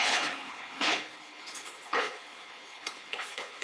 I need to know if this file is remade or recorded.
remade